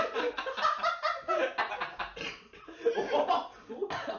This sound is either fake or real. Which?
real